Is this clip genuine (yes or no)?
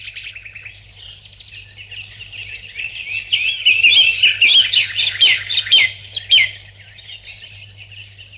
yes